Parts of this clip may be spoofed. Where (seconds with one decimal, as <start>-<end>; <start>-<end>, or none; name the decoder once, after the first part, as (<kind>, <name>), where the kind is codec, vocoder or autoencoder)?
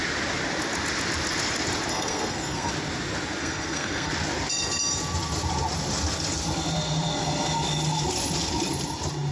1.9-2.7 (codec, SNAC); 3.4-4.1